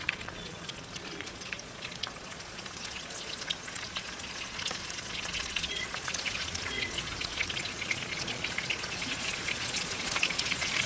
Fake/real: fake